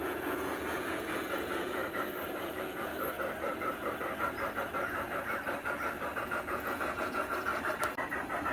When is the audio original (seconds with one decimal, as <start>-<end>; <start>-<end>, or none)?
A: 1.8-2.4; 2.9-6.2; 7.5-8.5